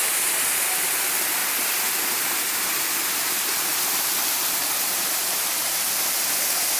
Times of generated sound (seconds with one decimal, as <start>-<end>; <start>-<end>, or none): none